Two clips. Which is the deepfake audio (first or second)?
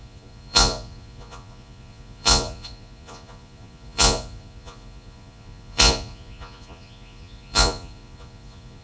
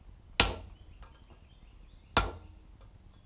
first